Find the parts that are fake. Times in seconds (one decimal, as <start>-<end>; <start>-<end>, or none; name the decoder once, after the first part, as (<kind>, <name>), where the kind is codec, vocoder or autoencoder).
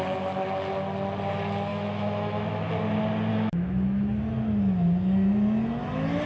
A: 1.7-2.7 (autoencoder, DAC-VAE); 3.3-4.2